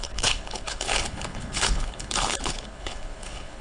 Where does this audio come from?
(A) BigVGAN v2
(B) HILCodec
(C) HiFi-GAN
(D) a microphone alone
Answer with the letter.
B